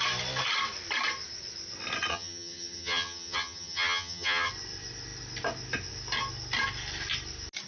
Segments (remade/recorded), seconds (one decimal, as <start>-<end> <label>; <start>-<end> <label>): 0.0-2.1 recorded; 2.1-4.5 remade; 4.5-7.7 recorded